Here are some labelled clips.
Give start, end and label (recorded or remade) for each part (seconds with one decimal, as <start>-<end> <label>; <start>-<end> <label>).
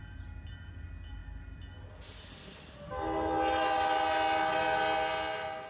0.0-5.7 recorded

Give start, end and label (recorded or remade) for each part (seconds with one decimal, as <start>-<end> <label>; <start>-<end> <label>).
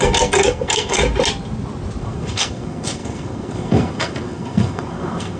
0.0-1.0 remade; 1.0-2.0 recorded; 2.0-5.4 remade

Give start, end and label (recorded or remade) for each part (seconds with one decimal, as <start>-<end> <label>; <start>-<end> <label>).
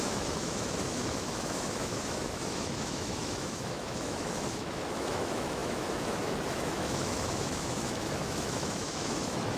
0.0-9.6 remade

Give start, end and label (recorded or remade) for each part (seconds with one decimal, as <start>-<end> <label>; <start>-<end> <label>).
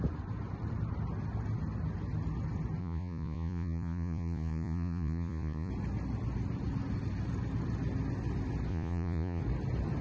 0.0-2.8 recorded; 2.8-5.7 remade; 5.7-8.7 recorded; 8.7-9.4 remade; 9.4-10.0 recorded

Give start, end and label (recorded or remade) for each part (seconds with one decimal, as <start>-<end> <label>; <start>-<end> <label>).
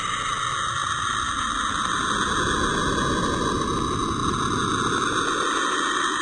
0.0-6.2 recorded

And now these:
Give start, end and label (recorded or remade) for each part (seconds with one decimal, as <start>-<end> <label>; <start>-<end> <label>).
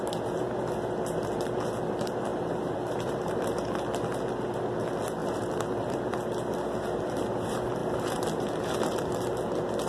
0.0-2.3 recorded; 2.3-3.7 remade; 3.7-5.2 recorded; 5.2-6.0 remade; 6.0-7.8 recorded; 7.8-9.1 remade; 9.1-9.9 recorded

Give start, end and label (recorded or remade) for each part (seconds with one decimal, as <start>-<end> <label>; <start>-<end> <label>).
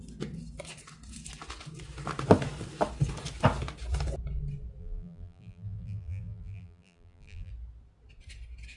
0.0-4.8 recorded; 4.8-7.5 remade; 7.5-8.8 recorded